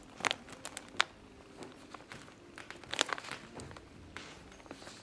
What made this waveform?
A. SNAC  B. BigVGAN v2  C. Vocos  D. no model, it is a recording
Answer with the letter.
D